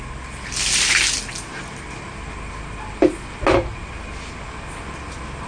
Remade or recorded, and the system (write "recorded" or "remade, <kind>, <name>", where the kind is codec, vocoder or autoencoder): recorded